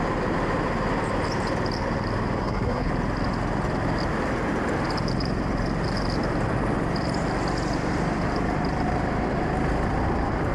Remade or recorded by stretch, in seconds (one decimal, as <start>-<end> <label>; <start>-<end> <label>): 0.0-2.4 recorded; 2.4-2.9 remade; 2.9-10.5 recorded